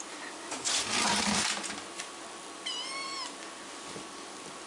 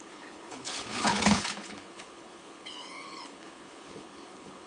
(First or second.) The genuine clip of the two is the first